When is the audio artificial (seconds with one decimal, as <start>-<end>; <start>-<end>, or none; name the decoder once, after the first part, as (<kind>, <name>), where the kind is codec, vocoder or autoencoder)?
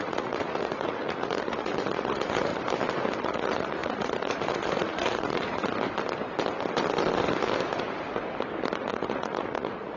0.0-2.5 (vocoder, Vocos); 3.2-5.7; 8.9-10.0